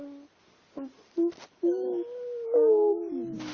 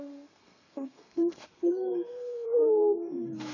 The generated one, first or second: second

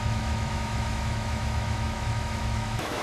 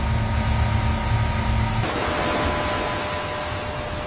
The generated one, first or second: first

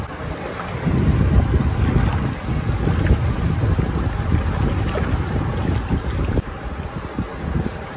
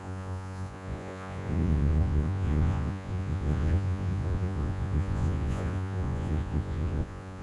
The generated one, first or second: second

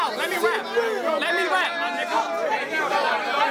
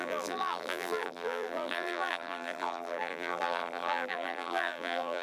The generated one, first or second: second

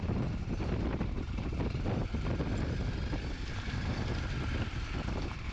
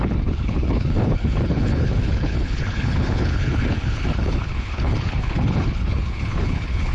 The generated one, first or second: second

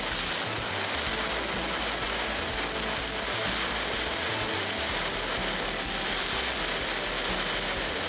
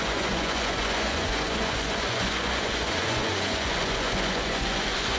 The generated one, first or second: second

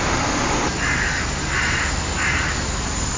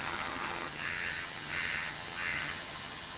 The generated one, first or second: second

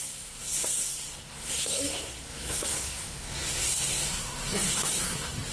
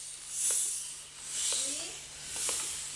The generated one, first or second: first